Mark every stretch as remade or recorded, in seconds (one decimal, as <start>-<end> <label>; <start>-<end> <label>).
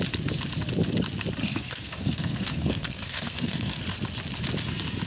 0.0-1.4 recorded; 1.4-3.8 remade; 3.8-5.1 recorded